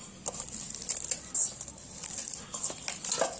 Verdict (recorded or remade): recorded